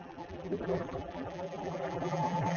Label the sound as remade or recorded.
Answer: remade